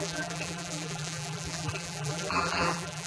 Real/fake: fake